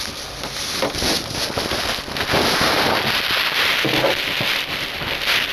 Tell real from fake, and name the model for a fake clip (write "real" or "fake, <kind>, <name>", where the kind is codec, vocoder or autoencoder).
real